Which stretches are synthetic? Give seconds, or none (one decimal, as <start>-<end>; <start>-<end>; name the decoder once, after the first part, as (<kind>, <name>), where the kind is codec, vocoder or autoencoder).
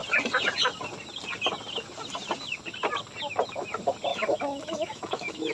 4.1-5.5 (autoencoder, DAC-VAE)